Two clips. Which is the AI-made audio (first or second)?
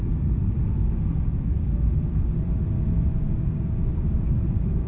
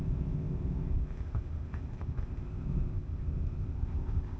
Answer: second